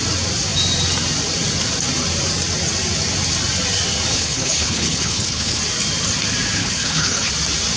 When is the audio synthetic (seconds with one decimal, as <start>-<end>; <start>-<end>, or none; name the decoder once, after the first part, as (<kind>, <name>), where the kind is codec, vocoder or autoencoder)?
4.1-5.6 (codec, HILCodec); 6.6-7.3